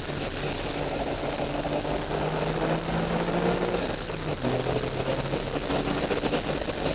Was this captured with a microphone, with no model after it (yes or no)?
yes